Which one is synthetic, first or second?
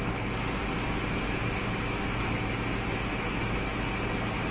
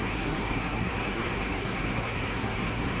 second